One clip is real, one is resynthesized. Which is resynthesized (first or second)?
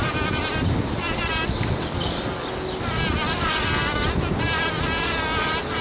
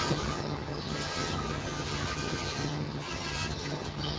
second